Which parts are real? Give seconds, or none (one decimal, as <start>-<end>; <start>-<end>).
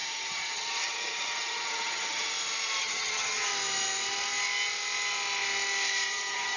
2.3-2.8; 3.5-6.1